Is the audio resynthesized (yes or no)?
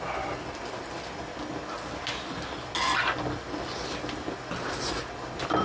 no